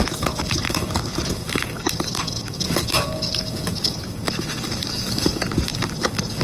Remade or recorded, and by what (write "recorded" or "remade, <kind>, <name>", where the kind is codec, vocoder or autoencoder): remade, codec, DAC